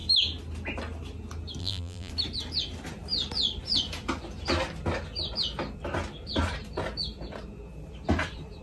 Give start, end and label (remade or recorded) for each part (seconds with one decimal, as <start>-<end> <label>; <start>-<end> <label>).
0.0-1.6 recorded; 1.6-2.1 remade; 2.1-8.6 recorded